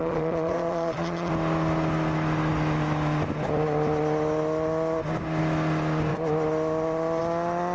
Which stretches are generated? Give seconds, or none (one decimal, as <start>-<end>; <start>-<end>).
0.0-1.3